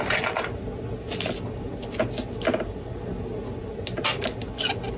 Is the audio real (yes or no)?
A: yes